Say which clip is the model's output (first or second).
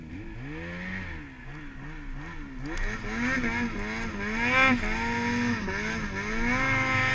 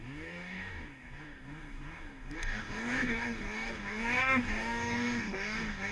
second